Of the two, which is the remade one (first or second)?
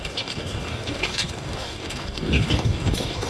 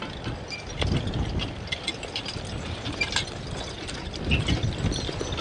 first